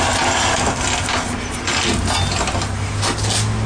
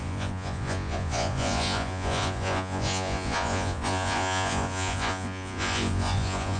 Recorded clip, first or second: first